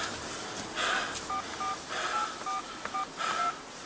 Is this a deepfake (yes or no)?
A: no